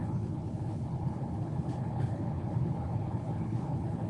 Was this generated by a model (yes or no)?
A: yes